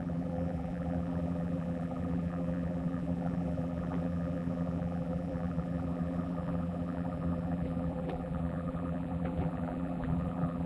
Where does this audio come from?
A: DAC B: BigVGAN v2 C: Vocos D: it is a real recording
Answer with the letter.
B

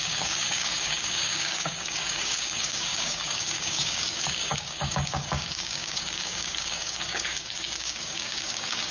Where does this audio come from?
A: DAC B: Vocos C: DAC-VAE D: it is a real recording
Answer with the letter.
A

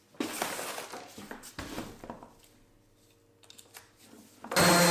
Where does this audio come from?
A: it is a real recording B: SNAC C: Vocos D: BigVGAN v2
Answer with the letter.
A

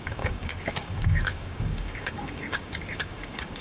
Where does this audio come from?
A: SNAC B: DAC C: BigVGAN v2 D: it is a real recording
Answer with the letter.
B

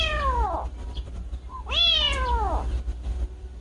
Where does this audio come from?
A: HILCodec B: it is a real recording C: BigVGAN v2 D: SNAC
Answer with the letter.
B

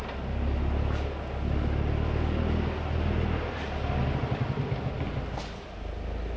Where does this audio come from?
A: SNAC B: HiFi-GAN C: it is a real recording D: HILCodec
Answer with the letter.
C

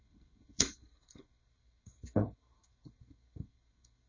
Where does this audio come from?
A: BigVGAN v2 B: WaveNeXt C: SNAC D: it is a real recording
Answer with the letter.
C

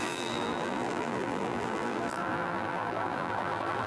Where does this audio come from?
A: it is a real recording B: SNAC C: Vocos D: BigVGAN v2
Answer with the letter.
D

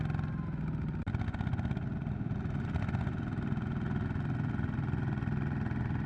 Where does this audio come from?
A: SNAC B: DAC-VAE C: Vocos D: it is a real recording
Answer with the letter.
D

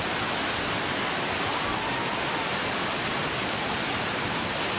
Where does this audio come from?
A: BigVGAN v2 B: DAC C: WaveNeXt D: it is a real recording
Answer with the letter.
D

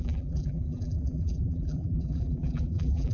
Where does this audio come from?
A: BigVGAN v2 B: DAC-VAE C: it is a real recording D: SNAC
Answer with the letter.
A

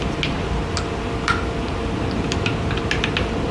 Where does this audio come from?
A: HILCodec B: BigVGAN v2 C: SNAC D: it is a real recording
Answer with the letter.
D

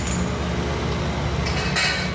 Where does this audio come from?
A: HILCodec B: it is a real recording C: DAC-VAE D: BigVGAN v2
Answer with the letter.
B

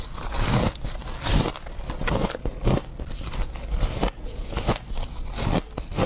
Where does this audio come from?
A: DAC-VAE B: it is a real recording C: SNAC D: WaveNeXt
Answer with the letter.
B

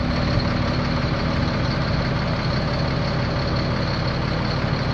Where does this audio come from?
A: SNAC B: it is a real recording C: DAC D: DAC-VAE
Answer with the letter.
B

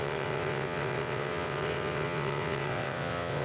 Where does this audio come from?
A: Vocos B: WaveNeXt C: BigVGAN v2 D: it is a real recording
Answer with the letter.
B